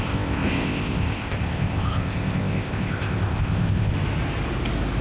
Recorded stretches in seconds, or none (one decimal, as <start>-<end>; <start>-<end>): 3.9-5.0